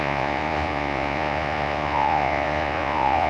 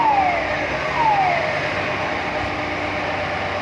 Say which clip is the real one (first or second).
second